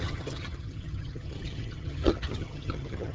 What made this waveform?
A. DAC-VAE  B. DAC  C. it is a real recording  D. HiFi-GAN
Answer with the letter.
D